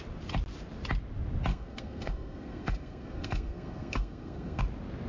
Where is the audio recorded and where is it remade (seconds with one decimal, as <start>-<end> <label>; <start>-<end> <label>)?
0.0-1.5 recorded; 1.5-4.6 remade; 4.6-5.1 recorded